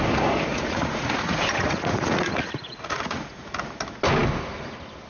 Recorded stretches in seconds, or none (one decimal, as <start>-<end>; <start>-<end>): 0.0-0.5; 3.6-5.1